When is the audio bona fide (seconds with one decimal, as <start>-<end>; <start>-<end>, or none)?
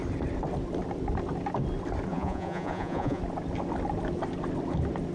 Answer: 0.0-2.1; 3.2-5.1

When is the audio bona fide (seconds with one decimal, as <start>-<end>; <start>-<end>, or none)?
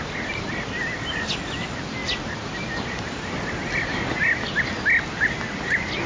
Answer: 0.0-6.1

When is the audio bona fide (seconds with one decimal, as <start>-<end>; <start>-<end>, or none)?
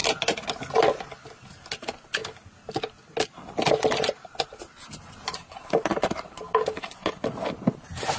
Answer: 0.0-8.2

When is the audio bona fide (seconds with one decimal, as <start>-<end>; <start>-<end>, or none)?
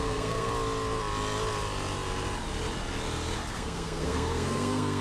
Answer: 0.5-3.5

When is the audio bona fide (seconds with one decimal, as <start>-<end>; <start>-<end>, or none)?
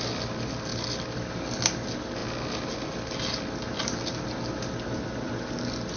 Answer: 0.0-6.0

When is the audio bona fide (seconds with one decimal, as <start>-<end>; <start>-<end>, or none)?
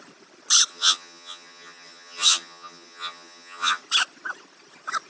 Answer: 0.0-0.7; 3.8-5.1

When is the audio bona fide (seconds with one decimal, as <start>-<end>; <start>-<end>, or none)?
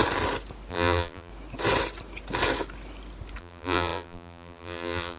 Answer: 0.0-0.7; 1.3-3.4